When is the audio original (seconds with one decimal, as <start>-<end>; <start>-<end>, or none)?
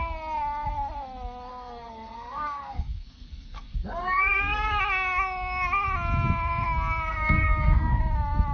0.0-1.5; 4.8-7.1; 8.0-8.5